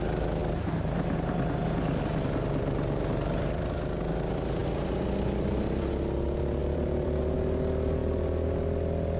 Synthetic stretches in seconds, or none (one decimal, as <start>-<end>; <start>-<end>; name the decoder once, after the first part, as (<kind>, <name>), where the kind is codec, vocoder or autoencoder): 4.6-5.9 (vocoder, BigVGAN v2); 6.6-7.2